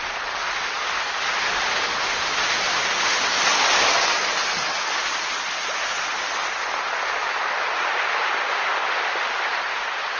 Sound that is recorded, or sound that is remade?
recorded